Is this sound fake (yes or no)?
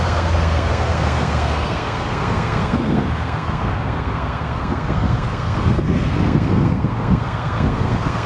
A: yes